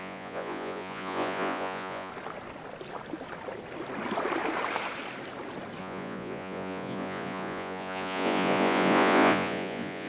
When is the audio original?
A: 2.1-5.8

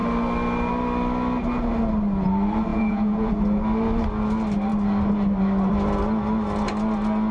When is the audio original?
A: 0.0-2.7; 3.3-7.3

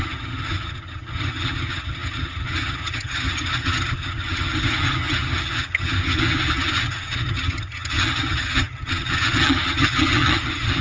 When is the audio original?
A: none

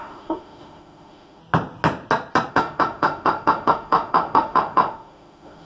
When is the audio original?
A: 1.4-2.5

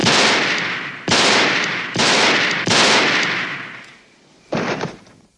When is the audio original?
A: 0.0-0.6; 2.0-3.4

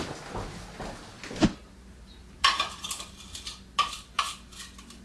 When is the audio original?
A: 0.0-2.2; 3.4-5.0